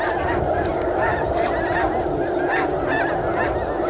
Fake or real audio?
real